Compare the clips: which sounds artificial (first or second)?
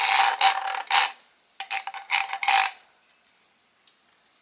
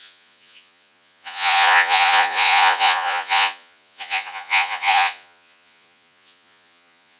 second